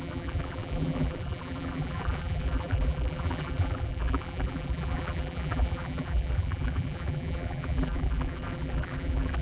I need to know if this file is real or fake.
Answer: fake